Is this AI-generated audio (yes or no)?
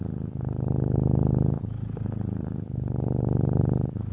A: no